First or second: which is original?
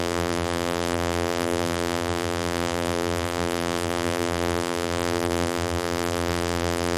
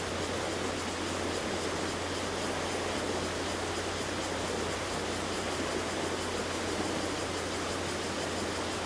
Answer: second